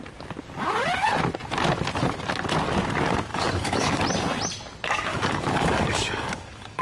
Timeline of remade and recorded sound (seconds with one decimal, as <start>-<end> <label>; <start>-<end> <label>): 0.0-3.3 recorded; 3.3-4.0 remade; 4.0-5.1 recorded; 5.1-6.8 remade